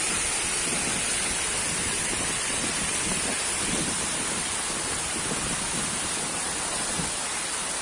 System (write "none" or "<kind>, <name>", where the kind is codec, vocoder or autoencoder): none